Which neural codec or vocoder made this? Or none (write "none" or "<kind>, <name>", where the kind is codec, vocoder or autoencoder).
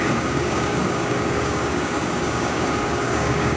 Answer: codec, DAC